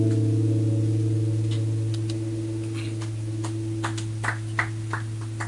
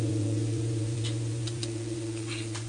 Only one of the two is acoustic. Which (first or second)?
first